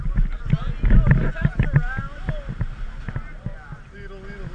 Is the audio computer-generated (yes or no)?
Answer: no